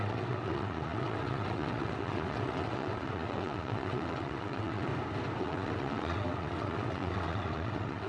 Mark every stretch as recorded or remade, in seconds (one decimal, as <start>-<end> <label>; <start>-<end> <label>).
0.0-4.9 remade; 4.9-5.4 recorded; 5.4-8.1 remade